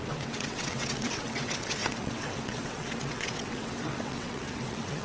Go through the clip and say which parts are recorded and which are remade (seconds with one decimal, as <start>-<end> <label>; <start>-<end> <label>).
0.0-5.0 remade